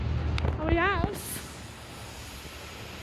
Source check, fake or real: real